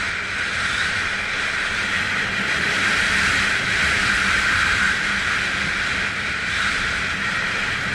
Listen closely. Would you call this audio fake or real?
real